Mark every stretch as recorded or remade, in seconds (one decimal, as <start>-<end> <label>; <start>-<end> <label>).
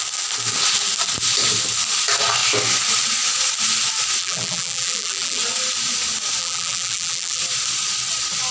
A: 0.0-4.2 recorded; 4.2-5.4 remade; 5.4-6.4 recorded; 6.4-7.4 remade; 7.4-8.5 recorded